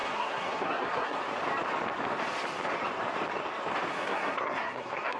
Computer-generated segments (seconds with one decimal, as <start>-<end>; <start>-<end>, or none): 0.0-1.2; 3.9-5.2